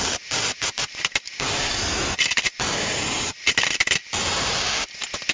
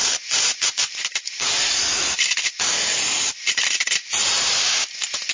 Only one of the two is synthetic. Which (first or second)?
second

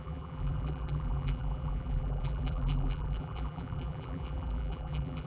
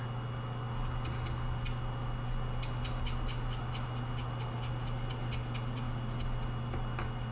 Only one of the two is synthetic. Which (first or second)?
first